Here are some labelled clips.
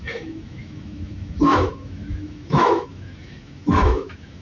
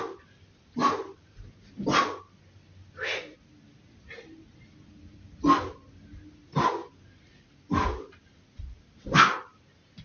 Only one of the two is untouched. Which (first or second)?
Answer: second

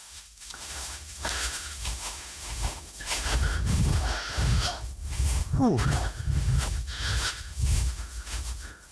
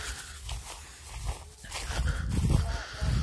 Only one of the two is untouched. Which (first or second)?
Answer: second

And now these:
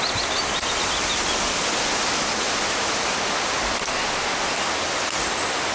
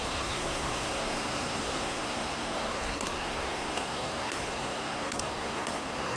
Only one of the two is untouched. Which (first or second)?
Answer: first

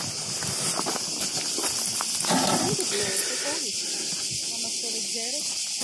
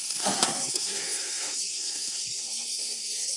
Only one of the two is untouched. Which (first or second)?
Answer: first